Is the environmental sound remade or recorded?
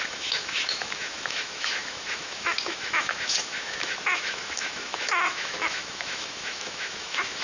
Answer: remade